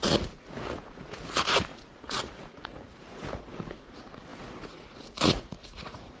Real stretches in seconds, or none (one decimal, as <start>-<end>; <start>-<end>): none